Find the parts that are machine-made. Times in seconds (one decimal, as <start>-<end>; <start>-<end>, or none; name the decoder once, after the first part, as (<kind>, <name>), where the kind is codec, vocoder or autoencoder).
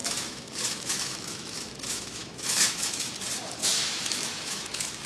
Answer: 0.0-3.1 (autoencoder, DAC-VAE); 3.6-5.1